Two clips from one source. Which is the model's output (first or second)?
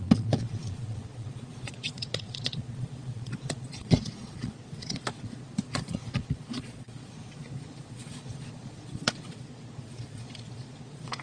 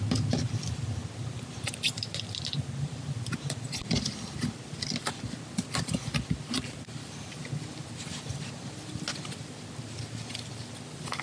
first